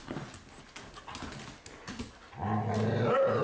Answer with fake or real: real